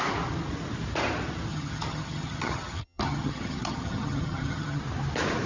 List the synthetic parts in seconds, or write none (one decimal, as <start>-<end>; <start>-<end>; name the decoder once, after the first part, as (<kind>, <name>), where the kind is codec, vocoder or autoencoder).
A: 1.5-4.8 (vocoder, HiFi-GAN)